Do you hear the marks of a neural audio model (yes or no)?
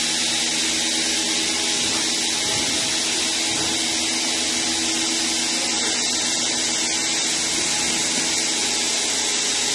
no